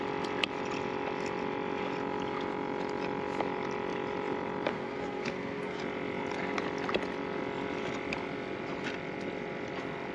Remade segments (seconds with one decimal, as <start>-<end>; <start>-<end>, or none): 4.7-5.8